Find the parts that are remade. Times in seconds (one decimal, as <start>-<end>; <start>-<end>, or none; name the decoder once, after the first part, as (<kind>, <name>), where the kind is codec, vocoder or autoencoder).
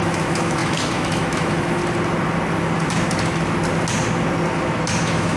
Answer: 0.0-1.8 (autoencoder, DAC-VAE); 5.0-5.4